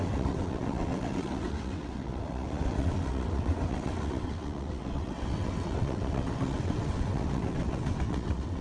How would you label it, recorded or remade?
remade